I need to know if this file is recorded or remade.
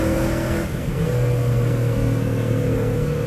remade